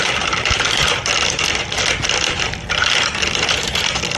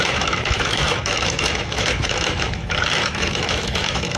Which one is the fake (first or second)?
second